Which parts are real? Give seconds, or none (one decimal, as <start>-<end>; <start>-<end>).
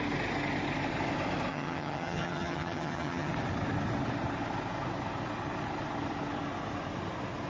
0.0-1.5; 3.3-7.5